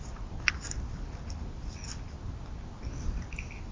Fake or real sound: real